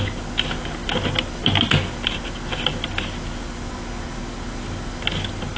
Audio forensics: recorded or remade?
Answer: recorded